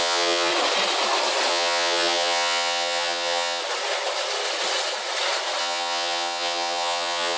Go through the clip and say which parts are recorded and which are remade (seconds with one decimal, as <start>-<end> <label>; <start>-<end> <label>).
0.0-0.5 remade; 0.5-1.5 recorded; 1.5-3.6 remade; 3.6-5.6 recorded; 5.6-7.4 remade